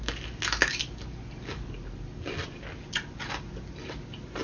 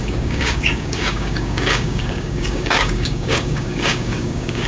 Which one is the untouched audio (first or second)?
first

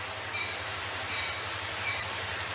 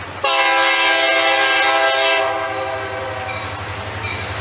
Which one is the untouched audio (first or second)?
second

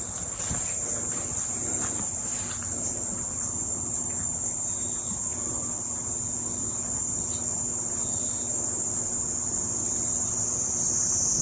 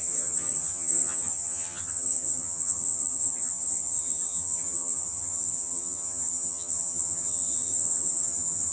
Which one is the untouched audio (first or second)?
first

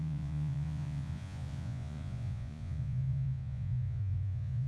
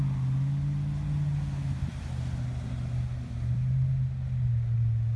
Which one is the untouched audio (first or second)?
second